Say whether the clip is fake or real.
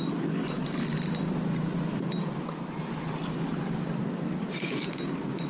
fake